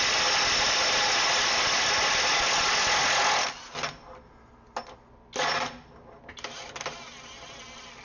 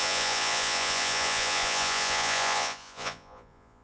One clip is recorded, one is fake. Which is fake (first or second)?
second